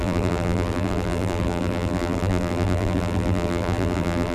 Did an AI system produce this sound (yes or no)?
yes